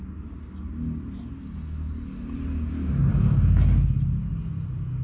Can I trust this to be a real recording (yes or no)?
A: yes